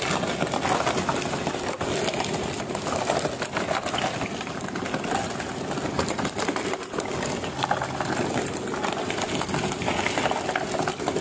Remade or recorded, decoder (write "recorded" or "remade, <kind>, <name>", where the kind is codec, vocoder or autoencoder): recorded